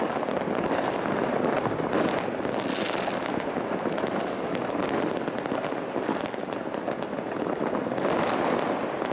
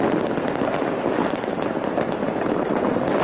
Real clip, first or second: first